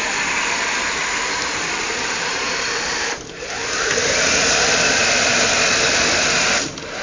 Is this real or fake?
fake